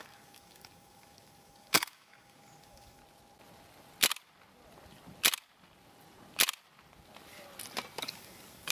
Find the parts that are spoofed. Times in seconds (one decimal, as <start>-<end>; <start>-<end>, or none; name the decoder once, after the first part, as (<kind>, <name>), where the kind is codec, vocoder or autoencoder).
0.0-3.0 (codec, DAC); 8.0-8.7